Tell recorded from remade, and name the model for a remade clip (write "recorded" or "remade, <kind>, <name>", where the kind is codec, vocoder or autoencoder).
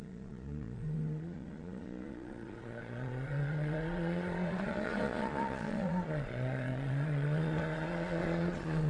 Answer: remade, vocoder, Vocos